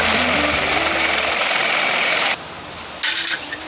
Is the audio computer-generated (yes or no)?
no